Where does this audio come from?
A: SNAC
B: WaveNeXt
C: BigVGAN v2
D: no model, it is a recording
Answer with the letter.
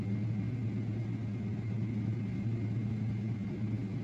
D